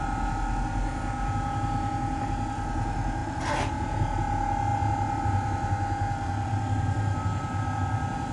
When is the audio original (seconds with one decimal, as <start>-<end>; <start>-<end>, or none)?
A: 0.0-8.3